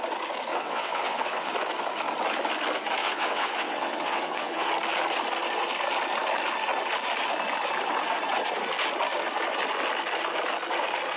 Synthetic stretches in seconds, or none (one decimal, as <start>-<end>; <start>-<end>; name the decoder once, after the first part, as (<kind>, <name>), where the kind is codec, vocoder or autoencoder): 0.5-1.5 (vocoder, WaveNeXt); 3.0-4.7